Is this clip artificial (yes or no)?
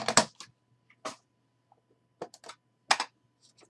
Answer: no